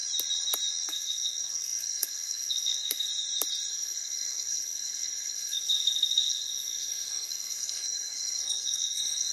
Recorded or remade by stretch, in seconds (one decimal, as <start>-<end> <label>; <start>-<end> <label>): 0.0-0.9 recorded; 0.9-3.1 remade; 3.1-3.7 recorded; 3.7-9.3 remade